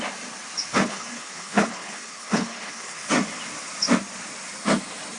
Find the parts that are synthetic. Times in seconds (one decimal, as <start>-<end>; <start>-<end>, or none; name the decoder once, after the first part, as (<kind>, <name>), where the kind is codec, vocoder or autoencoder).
0.7-3.1 (codec, HILCodec)